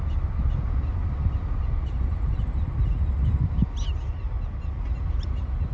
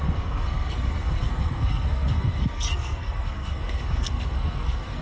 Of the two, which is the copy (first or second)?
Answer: second